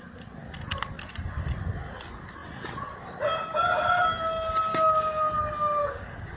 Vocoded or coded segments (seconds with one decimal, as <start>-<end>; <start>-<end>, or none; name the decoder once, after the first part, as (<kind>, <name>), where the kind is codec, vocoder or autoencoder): 4.7-5.2 (codec, DAC); 5.8-6.4